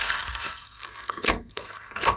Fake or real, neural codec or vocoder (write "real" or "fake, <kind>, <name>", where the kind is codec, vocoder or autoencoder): fake, codec, SNAC